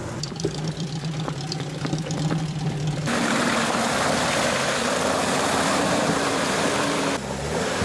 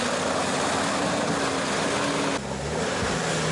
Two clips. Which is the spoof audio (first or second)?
first